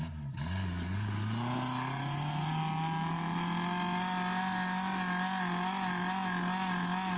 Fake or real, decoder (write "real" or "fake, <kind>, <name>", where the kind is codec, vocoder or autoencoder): real